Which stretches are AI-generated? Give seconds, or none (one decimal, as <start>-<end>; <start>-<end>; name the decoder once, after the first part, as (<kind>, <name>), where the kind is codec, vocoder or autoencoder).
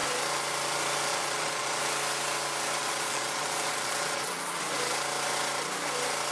1.1-1.8 (vocoder, Vocos); 2.8-4.6